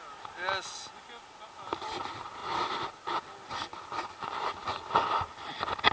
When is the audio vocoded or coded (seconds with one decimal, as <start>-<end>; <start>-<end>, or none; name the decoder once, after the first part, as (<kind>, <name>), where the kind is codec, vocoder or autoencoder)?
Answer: none